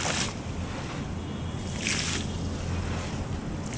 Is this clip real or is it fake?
real